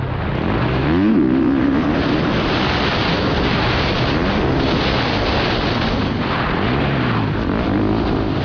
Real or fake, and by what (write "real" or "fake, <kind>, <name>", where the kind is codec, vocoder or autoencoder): real